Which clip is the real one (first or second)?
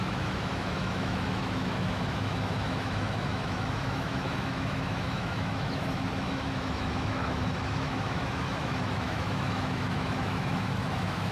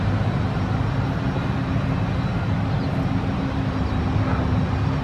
second